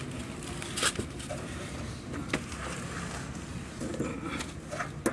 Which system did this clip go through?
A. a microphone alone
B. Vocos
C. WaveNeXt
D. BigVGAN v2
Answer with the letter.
A